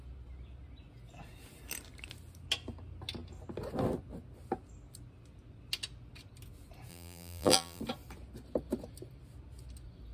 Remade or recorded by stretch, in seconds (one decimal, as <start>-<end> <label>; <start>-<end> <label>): 0.0-6.9 recorded; 6.9-7.8 remade; 7.8-10.1 recorded